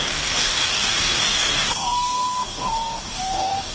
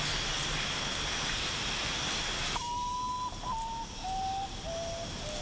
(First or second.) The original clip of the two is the second